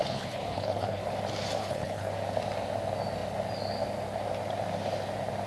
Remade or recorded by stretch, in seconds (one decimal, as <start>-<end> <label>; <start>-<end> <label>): 0.0-1.0 remade; 1.0-1.6 recorded; 1.6-2.1 remade; 2.1-5.5 recorded